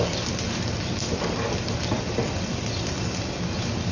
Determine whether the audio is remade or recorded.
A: recorded